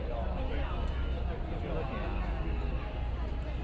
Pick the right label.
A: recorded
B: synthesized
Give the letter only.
A